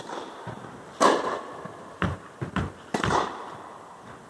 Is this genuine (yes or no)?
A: yes